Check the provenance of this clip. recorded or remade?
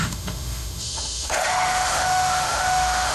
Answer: remade